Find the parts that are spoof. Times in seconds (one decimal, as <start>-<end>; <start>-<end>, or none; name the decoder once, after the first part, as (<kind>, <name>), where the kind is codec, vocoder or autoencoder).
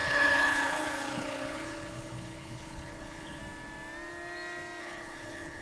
0.0-3.4 (codec, HILCodec); 4.8-5.6